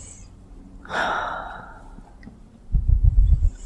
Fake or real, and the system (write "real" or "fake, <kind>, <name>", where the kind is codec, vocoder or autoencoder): fake, vocoder, BigVGAN v2